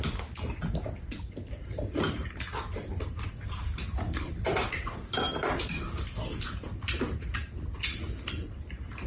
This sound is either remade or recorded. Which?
remade